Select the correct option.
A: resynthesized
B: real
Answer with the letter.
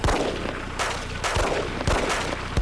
B